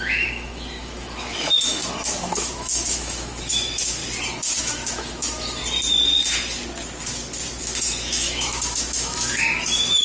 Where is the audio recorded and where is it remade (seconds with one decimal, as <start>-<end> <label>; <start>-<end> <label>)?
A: 0.0-4.0 remade; 4.0-4.6 recorded; 4.6-5.6 remade; 5.6-7.6 recorded; 7.6-10.0 remade